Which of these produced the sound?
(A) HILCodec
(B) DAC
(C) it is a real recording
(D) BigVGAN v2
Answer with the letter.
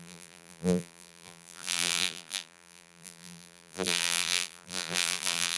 D